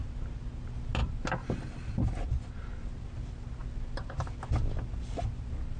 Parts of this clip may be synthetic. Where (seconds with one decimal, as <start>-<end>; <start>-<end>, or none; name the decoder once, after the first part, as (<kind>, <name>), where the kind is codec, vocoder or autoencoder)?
none